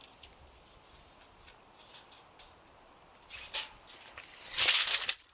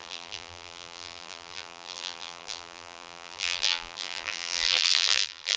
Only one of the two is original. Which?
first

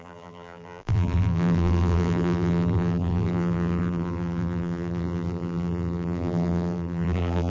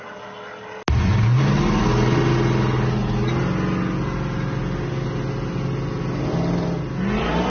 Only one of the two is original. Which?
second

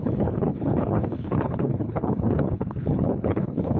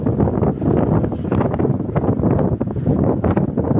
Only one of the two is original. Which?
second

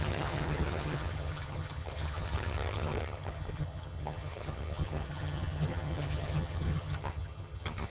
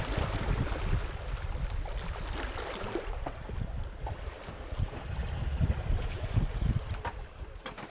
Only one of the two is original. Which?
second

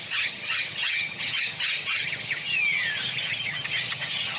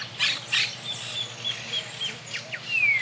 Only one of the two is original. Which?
second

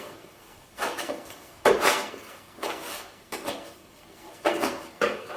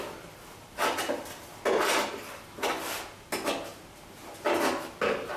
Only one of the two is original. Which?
second